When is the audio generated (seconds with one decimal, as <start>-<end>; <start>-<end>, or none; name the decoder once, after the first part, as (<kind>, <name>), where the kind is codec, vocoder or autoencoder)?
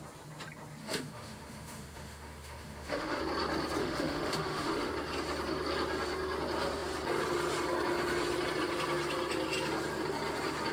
0.8-3.2 (autoencoder, DAC-VAE); 3.8-4.9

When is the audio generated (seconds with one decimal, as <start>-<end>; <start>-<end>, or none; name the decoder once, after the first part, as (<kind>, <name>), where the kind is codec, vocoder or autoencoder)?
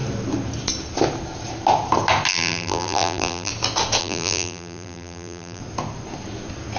2.3-3.5 (vocoder, BigVGAN v2); 4.0-5.6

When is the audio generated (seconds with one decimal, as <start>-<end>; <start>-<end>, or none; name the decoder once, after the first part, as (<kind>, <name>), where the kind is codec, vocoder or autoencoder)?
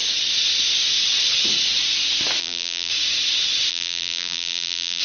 2.4-2.9 (vocoder, BigVGAN v2); 3.7-5.0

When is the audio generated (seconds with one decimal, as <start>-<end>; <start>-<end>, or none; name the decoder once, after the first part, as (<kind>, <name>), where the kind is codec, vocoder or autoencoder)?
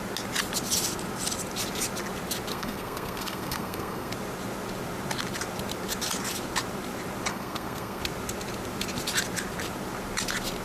2.5-4.1 (codec, SNAC); 7.3-8.0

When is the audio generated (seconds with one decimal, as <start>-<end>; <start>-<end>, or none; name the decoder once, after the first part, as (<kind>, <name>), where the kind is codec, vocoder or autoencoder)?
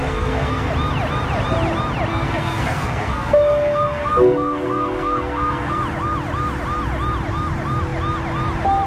0.0-0.7 (codec, SNAC); 2.1-5.8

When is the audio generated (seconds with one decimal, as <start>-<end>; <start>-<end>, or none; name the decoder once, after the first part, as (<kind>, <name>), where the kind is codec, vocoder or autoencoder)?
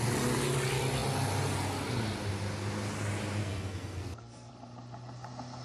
3.4-4.5 (codec, SNAC)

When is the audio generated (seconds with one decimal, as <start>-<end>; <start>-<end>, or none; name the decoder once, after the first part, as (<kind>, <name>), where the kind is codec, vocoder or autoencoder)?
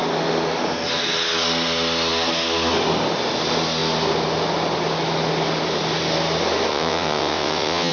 6.7-7.9 (vocoder, WaveNeXt)